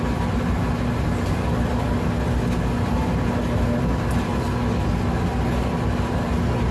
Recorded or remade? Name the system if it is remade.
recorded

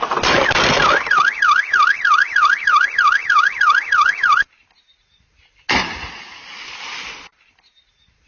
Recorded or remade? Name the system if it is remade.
recorded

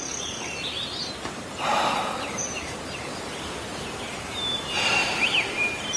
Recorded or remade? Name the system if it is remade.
remade, vocoder, BigVGAN v2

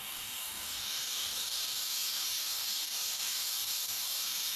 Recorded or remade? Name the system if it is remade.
remade, codec, DAC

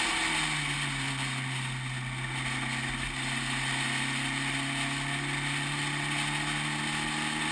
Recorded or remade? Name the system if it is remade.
recorded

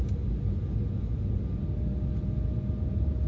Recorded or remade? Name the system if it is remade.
recorded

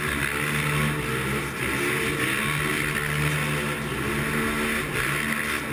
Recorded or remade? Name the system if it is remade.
recorded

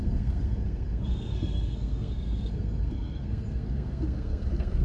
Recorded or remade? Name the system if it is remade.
remade, codec, SNAC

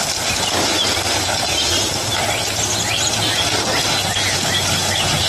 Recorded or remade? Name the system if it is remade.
recorded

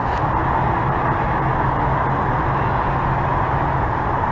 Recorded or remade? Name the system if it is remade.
recorded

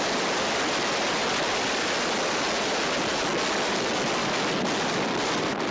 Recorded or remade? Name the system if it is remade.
recorded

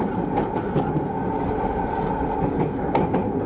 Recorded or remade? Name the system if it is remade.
recorded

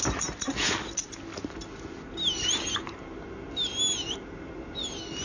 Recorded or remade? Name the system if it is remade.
recorded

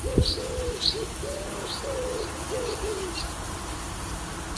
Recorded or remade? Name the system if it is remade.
remade, vocoder, BigVGAN v2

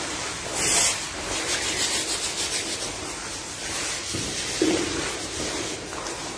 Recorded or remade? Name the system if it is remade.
recorded